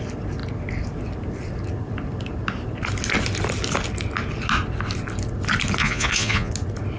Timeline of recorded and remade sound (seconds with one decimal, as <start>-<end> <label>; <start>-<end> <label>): 0.0-5.8 recorded; 5.8-6.5 remade; 6.5-7.0 recorded